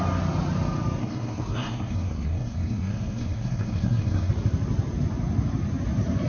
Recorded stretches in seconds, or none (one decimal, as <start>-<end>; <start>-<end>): 0.0-1.0; 4.3-6.3